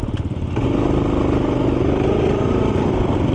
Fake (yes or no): no